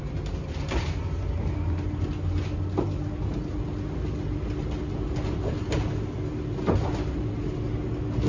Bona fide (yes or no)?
yes